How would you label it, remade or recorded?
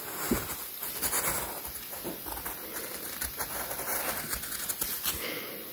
recorded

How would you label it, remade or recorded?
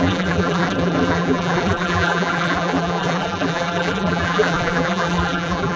remade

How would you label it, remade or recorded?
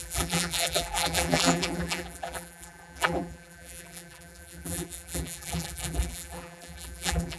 remade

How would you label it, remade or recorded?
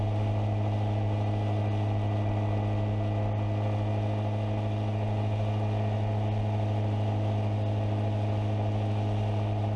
recorded